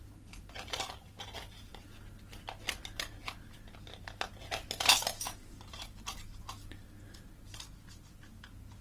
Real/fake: real